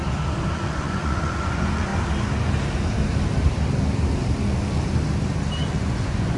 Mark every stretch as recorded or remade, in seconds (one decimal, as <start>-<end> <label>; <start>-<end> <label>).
0.0-0.5 recorded; 0.5-1.9 remade; 1.9-5.7 recorded; 5.7-6.4 remade